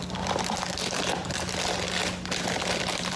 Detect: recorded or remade recorded